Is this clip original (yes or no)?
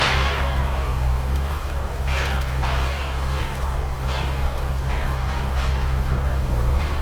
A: no